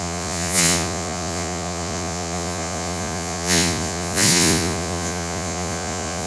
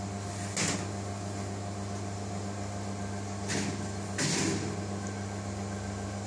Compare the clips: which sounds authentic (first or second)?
second